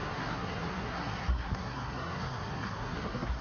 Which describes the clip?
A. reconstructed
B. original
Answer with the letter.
A